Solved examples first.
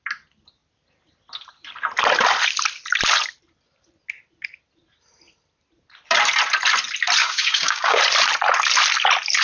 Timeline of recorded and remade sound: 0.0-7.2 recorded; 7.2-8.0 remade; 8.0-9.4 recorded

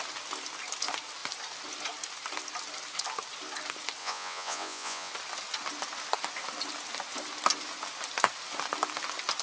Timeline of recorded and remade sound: 0.0-4.0 recorded; 4.0-5.1 remade; 5.1-9.4 recorded

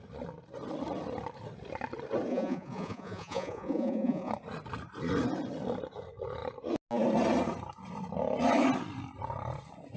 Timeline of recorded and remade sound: 0.0-2.3 recorded; 2.3-4.3 remade; 4.3-10.0 recorded